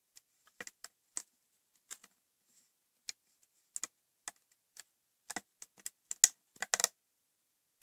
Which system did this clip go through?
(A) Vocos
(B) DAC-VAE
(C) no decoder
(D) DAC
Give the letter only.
C